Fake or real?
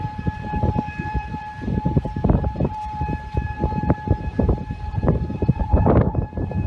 fake